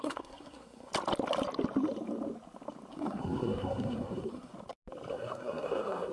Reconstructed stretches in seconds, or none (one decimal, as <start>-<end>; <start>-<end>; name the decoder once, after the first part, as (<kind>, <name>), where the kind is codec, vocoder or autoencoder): 0.0-0.9 (codec, SNAC); 2.9-4.5; 5.1-6.1